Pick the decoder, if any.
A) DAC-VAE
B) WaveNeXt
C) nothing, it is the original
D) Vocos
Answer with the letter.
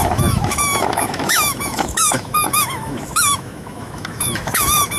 A